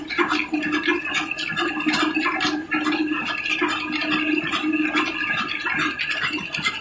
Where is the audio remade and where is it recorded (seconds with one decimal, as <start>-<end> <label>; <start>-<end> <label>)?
0.0-6.8 recorded